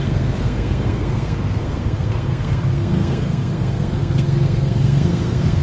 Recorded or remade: remade